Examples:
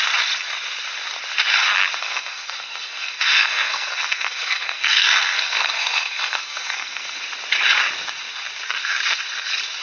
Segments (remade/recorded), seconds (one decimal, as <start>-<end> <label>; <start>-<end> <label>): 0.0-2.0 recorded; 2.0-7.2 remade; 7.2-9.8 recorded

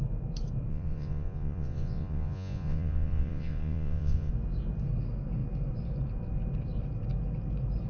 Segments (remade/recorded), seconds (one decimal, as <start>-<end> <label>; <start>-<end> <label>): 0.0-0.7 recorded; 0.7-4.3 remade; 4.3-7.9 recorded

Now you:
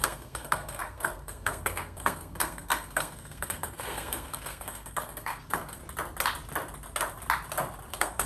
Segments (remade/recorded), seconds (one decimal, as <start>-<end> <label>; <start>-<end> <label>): 0.0-5.8 remade; 5.8-7.9 recorded; 7.9-8.3 remade

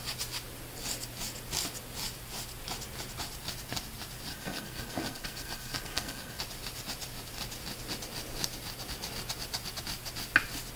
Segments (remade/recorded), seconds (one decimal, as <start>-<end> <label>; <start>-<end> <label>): 0.0-4.3 recorded; 4.3-6.4 remade; 6.4-10.8 recorded

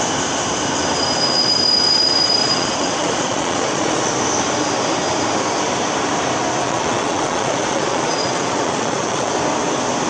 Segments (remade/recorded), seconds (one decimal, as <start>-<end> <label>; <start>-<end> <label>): 0.0-2.4 recorded; 2.4-4.1 remade; 4.1-6.6 recorded; 6.6-9.3 remade; 9.3-10.1 recorded